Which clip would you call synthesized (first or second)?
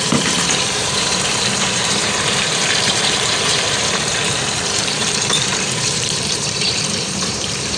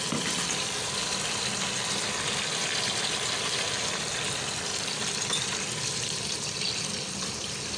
first